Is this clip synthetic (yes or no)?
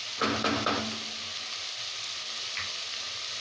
no